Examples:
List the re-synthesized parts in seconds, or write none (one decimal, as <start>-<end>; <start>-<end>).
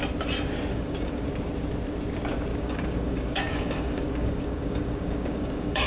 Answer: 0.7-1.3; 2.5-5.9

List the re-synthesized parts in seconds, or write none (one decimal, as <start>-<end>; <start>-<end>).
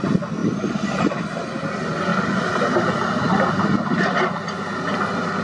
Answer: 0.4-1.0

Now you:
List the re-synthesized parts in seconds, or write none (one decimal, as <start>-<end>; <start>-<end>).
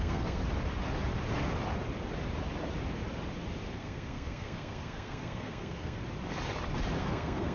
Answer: 0.0-0.4; 3.7-6.0; 7.0-7.5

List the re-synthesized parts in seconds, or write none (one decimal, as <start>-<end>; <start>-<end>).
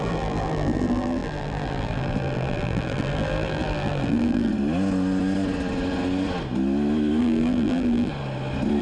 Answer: 0.0-4.5; 7.2-8.1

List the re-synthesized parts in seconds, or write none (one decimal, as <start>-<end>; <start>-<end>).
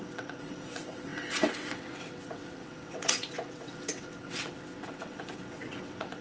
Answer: 0.0-6.2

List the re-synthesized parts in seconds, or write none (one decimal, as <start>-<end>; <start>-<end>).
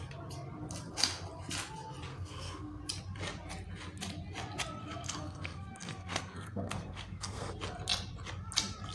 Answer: 2.1-2.8; 4.8-7.5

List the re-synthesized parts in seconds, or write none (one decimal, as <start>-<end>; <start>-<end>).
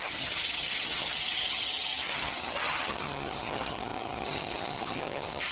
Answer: 0.0-5.5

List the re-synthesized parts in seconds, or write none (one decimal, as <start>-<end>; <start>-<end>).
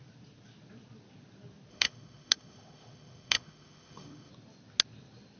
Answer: 1.7-4.3